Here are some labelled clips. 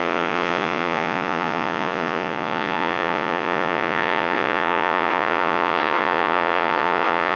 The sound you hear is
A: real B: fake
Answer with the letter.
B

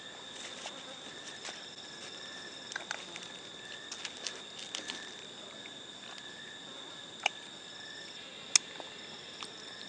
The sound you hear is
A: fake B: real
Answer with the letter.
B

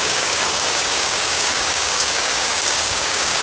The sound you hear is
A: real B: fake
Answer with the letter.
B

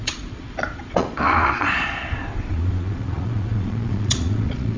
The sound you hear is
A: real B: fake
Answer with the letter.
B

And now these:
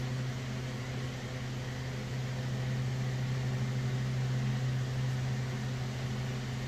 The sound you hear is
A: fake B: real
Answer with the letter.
B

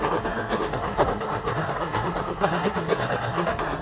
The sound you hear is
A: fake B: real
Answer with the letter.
A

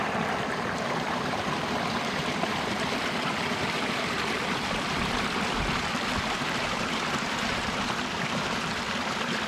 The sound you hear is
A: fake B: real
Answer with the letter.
A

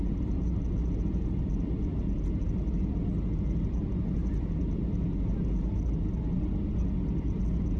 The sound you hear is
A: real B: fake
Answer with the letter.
A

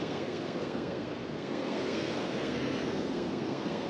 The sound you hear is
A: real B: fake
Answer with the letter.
B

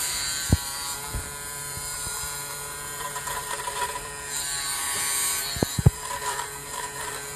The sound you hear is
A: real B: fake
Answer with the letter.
B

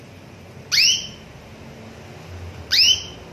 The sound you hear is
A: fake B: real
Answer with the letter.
B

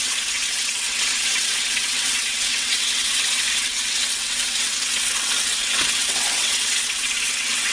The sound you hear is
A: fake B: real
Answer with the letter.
A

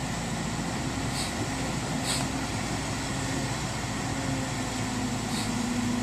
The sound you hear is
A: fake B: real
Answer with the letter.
B